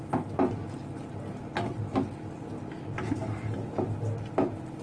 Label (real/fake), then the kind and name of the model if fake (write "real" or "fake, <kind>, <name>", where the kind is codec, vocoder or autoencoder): real